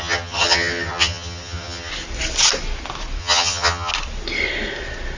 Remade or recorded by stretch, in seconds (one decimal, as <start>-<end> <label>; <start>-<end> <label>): 0.0-1.9 remade; 1.9-3.2 recorded; 3.2-3.9 remade; 3.9-5.2 recorded